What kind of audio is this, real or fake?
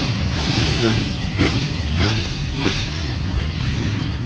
fake